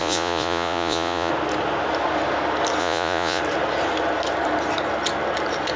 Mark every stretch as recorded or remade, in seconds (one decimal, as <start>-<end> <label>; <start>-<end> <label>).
0.0-1.3 remade; 1.3-2.8 recorded; 2.8-3.4 remade; 3.4-5.8 recorded